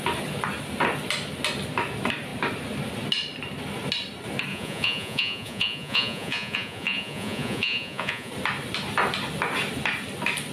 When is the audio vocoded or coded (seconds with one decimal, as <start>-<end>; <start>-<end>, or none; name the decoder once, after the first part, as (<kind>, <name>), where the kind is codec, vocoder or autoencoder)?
4.5-8.3 (vocoder, Vocos)